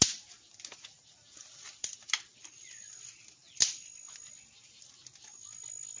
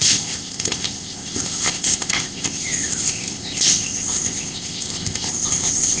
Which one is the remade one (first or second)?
second